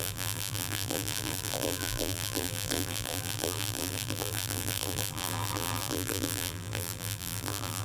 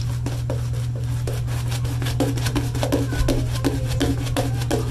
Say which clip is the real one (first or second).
second